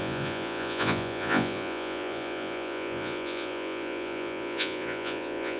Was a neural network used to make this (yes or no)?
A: yes